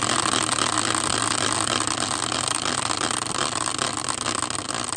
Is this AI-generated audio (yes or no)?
no